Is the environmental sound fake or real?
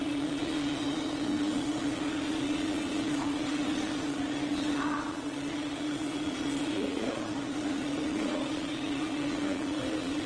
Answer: fake